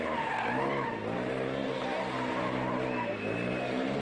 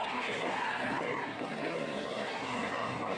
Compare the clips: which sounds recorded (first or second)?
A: first